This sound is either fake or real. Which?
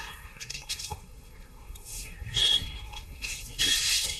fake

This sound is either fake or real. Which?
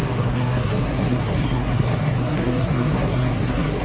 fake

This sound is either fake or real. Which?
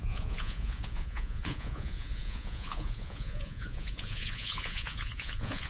fake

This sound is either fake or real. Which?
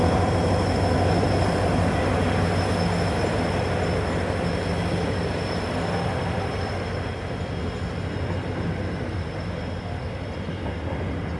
real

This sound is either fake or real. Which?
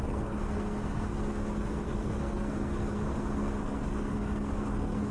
fake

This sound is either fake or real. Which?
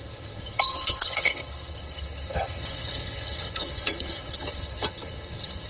fake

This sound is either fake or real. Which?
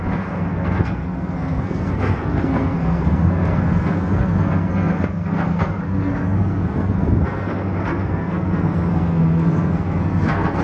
fake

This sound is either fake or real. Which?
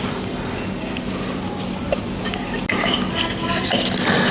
real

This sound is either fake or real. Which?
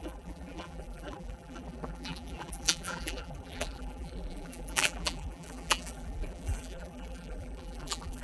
fake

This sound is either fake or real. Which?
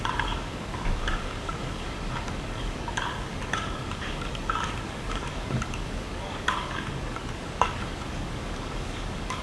fake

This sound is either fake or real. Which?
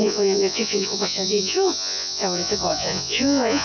fake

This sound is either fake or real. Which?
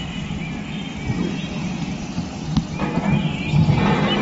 real